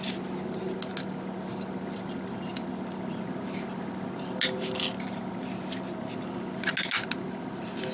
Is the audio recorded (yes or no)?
yes